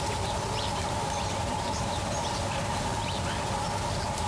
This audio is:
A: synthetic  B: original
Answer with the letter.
B